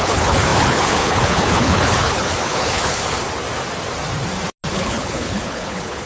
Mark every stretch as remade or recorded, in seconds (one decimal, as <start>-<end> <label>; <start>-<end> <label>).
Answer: 0.0-3.2 remade; 3.2-4.7 recorded; 4.7-6.1 remade